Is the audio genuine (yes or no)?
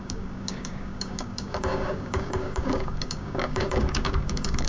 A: no